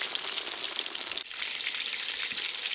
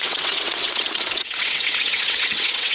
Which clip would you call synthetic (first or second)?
second